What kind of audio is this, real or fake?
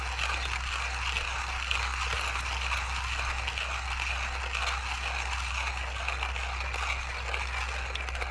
real